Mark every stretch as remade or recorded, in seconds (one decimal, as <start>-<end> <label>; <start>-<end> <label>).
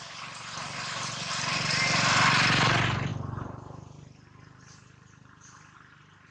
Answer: 0.0-6.3 recorded